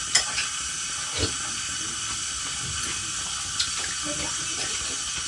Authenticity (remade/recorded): recorded